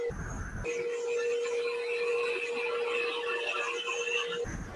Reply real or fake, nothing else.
real